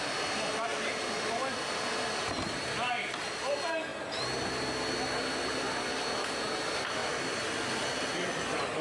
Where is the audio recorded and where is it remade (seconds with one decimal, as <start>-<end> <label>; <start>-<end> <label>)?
0.0-0.7 recorded; 0.7-3.5 remade; 3.5-7.0 recorded; 7.0-7.7 remade; 7.7-8.8 recorded